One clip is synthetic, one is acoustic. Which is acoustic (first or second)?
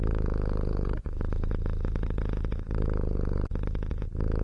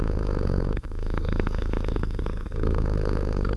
first